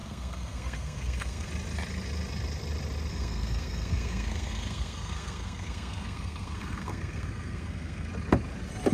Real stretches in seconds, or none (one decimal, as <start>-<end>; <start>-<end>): 1.5-3.1; 8.1-8.9